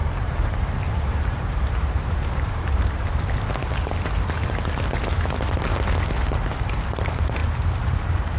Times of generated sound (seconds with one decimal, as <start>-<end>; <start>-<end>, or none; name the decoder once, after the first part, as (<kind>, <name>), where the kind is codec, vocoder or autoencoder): 0.0-3.2 (vocoder, BigVGAN v2); 5.6-6.1; 7.4-8.4